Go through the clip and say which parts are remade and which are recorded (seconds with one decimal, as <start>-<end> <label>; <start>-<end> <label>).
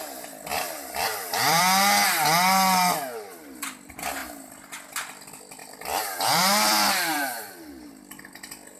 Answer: 0.0-0.5 recorded; 0.5-1.6 remade; 1.6-5.6 recorded; 5.6-8.2 remade; 8.2-8.8 recorded